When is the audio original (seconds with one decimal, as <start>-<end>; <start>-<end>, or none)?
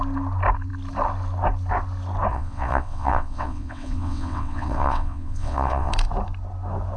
0.0-2.3; 5.9-7.0